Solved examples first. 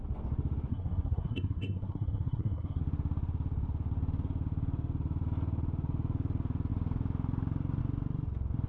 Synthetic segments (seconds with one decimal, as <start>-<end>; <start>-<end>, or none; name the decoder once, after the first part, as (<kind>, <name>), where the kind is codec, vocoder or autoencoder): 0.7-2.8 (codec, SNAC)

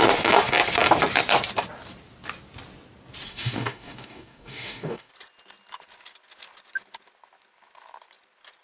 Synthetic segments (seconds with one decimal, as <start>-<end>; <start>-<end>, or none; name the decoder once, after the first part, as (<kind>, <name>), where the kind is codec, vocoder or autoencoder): 3.3-5.1 (codec, DAC)

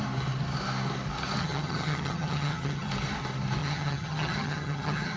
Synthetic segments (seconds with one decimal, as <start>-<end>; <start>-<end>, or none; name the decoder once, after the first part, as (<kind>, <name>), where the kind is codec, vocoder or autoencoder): 1.4-2.9 (vocoder, HiFi-GAN); 3.6-5.2

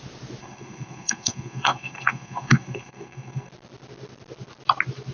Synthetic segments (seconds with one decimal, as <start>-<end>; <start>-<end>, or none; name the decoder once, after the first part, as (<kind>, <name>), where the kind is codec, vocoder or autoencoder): 0.4-3.5 (codec, SNAC)